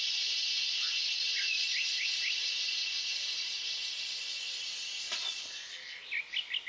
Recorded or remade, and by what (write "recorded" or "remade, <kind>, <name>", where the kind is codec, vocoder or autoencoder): recorded